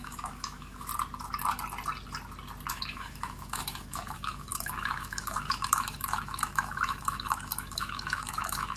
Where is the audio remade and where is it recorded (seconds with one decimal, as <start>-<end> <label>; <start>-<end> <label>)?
0.0-0.9 remade; 0.9-2.7 recorded; 2.7-8.8 remade